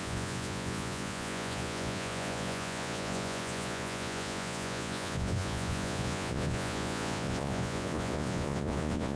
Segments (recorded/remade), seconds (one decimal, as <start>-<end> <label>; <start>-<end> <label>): 0.0-9.2 remade